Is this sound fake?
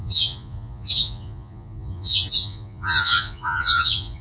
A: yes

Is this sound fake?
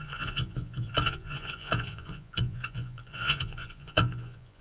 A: yes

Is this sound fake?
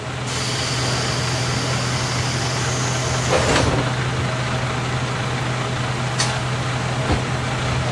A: no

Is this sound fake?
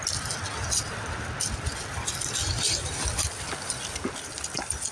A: no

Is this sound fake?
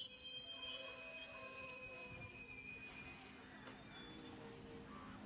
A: no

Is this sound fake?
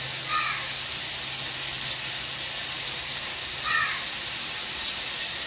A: no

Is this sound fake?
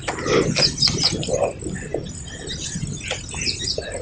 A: no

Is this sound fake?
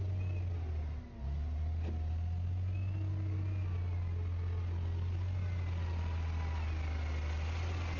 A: no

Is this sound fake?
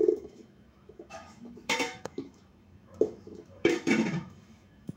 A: yes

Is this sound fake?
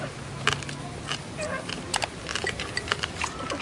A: no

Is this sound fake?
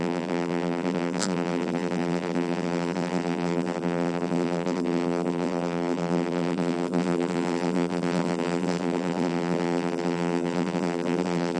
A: yes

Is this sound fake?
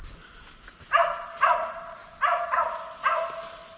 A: no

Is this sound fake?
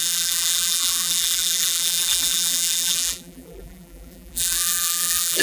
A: yes